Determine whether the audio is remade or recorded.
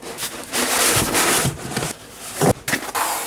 recorded